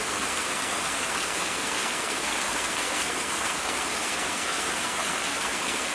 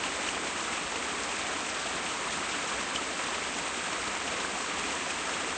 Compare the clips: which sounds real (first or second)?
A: second